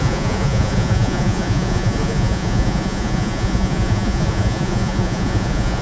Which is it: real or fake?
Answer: fake